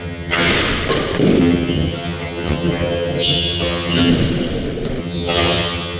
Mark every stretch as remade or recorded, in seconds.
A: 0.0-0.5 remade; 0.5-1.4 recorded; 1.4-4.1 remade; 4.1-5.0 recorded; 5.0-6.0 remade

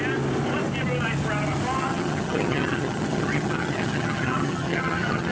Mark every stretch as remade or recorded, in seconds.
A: 0.0-1.8 recorded; 1.8-5.3 remade

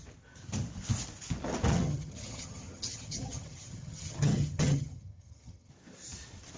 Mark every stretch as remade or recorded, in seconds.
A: 0.0-1.7 recorded; 1.7-5.7 remade; 5.7-6.6 recorded

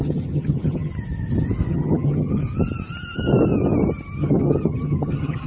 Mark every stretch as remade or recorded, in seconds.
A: 0.0-0.9 remade; 0.9-1.7 recorded; 1.7-2.4 remade; 2.4-4.2 recorded; 4.2-5.5 remade

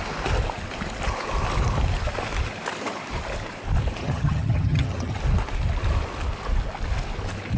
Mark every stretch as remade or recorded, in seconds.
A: 0.0-4.0 recorded; 4.0-5.2 remade; 5.2-7.6 recorded

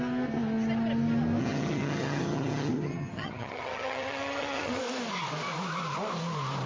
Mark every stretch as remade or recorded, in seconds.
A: 0.0-1.4 recorded; 1.4-4.8 remade; 4.8-6.7 recorded

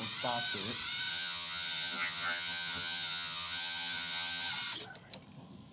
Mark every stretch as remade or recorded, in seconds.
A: 0.0-1.1 recorded; 1.1-4.5 remade; 4.5-5.7 recorded

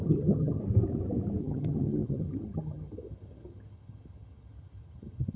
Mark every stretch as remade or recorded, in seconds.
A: 0.0-0.6 remade; 0.6-1.4 recorded; 1.4-5.4 remade